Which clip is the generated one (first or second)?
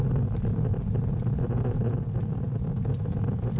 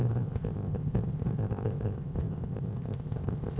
second